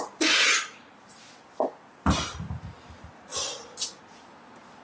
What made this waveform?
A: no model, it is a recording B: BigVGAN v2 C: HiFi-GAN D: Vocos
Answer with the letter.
A